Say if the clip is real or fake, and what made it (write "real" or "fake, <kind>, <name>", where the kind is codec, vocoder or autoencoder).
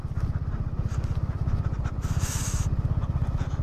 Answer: real